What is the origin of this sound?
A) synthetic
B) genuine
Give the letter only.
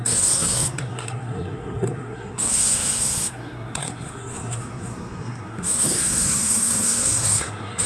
A